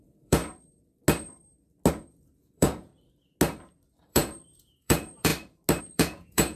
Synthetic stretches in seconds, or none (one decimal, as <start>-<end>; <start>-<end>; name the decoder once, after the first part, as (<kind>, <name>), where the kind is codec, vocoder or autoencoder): 0.0-0.4 (vocoder, Vocos); 1.9-2.9; 4.0-5.3; 5.8-6.5